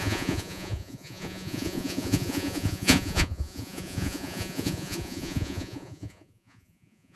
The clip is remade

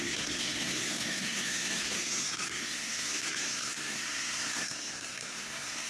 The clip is remade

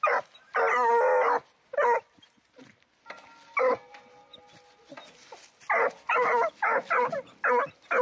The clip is recorded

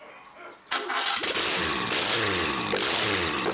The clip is recorded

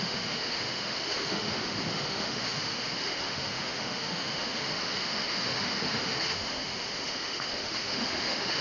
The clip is remade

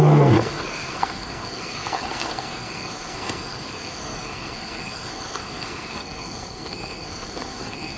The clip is remade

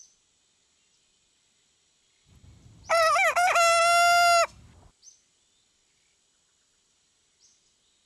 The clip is recorded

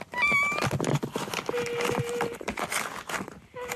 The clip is recorded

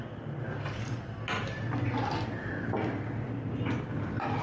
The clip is recorded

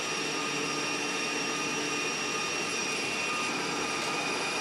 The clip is recorded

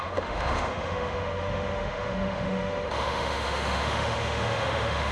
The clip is remade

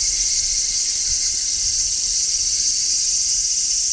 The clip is recorded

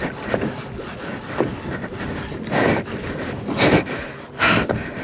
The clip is recorded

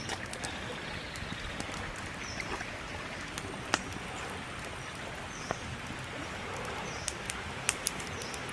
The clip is recorded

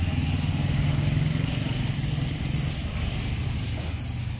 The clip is recorded